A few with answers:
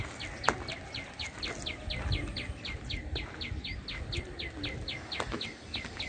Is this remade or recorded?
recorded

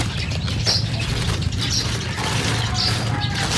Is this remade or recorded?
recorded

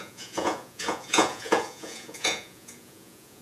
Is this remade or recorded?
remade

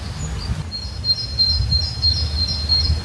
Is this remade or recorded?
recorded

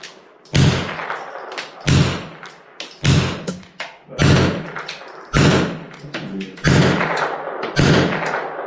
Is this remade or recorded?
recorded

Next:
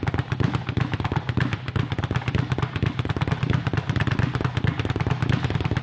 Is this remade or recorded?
recorded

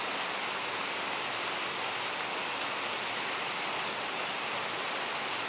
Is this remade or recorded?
recorded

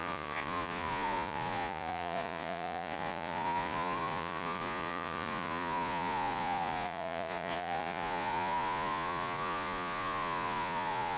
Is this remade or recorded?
remade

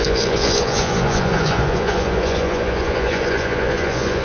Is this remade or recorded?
remade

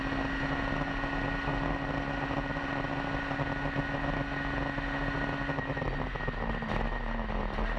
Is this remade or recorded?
recorded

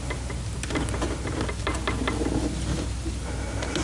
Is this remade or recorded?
recorded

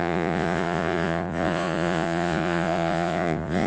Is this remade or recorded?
remade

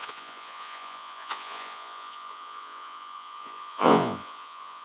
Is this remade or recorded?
remade